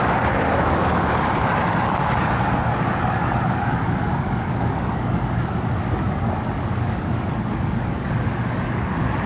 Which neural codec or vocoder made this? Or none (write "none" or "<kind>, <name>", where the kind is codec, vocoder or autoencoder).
codec, DAC